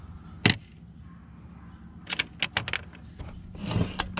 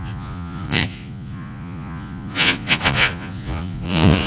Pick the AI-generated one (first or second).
second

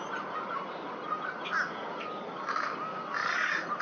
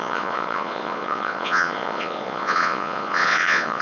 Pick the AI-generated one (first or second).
second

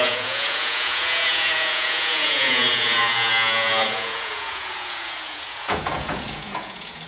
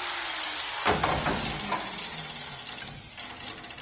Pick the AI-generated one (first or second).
first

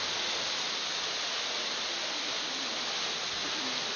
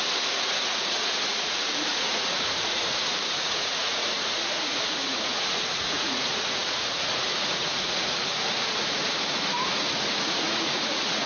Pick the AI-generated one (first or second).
second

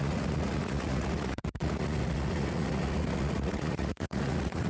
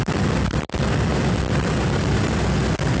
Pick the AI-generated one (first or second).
first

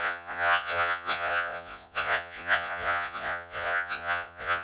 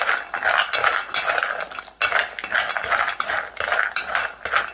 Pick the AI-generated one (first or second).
first